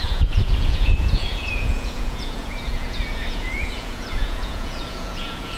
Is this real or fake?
fake